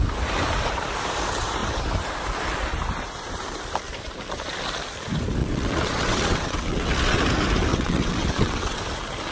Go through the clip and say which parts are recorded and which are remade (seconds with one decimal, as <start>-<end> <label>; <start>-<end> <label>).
0.0-5.4 recorded; 5.4-7.2 remade; 7.2-7.7 recorded; 7.7-8.8 remade; 8.8-9.3 recorded